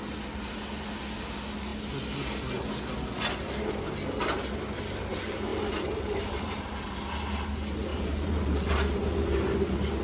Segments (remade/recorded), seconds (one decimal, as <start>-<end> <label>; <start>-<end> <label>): 0.0-5.5 recorded; 5.5-6.6 remade; 6.6-7.9 recorded; 7.9-10.0 remade

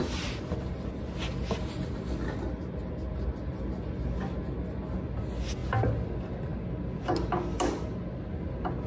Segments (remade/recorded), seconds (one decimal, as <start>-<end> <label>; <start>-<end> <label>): 0.0-8.9 recorded

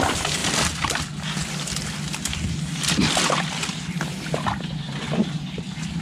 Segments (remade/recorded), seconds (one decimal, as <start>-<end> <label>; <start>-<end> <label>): 0.0-0.4 recorded; 0.4-1.0 remade; 1.0-6.0 recorded

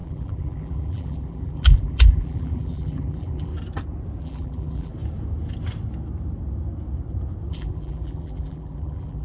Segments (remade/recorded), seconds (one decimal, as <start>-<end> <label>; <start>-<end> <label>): 0.0-3.5 remade; 3.5-4.2 recorded; 4.2-4.9 remade; 4.9-7.5 recorded; 7.5-9.2 remade

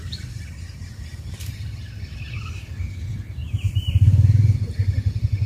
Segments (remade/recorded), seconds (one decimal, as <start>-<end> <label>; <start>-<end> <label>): 0.0-3.4 remade; 3.4-3.9 recorded; 3.9-5.5 remade

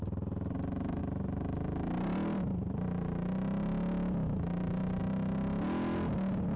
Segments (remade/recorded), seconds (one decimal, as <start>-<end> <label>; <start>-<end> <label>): 0.0-6.6 recorded

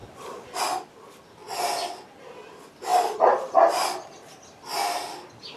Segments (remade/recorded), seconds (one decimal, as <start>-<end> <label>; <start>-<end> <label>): 0.0-5.6 recorded